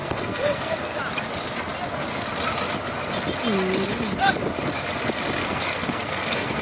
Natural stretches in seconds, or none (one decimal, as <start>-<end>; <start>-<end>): 1.0-5.4